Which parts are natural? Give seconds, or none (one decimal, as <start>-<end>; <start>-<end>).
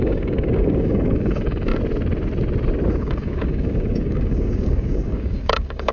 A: 1.7-3.0